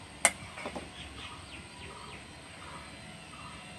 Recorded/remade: recorded